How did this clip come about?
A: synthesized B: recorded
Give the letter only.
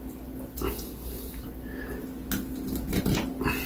B